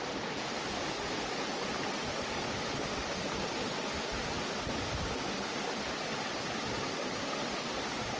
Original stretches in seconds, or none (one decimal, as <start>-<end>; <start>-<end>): 0.0-8.2